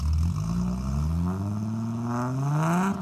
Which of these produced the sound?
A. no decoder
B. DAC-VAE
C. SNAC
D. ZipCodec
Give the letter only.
A